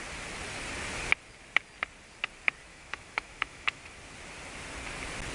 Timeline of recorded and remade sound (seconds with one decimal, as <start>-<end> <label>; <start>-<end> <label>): 0.0-2.7 recorded; 2.7-3.8 remade; 3.8-5.3 recorded